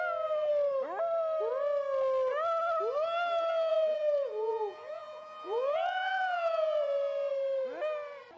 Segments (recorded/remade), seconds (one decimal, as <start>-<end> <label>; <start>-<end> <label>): 0.0-3.7 recorded; 3.7-7.3 remade; 7.3-8.4 recorded